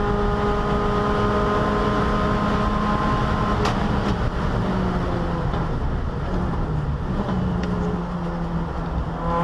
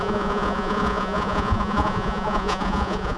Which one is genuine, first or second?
first